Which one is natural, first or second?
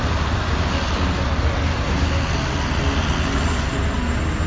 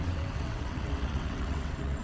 first